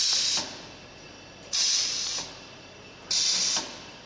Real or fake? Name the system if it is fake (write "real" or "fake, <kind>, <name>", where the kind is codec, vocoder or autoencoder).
real